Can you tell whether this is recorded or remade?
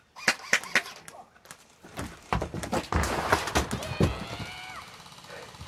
recorded